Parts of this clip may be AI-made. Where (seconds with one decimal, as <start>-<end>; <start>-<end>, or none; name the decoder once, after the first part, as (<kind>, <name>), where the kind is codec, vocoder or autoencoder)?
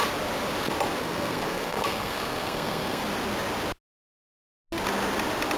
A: 1.0-3.0 (codec, SNAC)